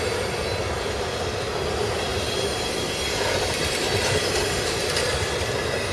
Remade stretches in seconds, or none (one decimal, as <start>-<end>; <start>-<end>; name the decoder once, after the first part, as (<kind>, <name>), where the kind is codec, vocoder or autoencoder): 2.1-5.1 (vocoder, BigVGAN v2)